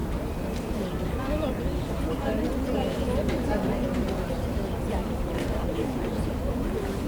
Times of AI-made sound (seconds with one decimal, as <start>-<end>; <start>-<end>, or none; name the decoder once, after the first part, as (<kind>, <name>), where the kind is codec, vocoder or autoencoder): 5.0-6.5 (vocoder, BigVGAN v2)